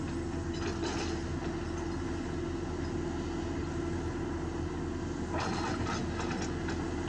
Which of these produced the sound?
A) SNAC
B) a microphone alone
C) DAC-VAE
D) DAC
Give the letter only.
B